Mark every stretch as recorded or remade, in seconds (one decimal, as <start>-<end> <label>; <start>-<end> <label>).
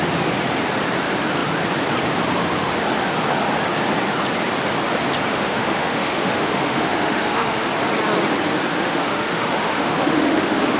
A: 0.0-5.3 recorded; 5.3-7.7 remade; 7.7-8.7 recorded; 8.7-10.8 remade